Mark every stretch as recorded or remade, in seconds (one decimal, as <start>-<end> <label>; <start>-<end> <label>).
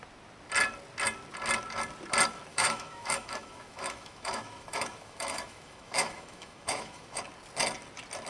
0.0-2.5 recorded; 2.5-7.2 remade; 7.2-8.3 recorded